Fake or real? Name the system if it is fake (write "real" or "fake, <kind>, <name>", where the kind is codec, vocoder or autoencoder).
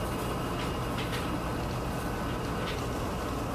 real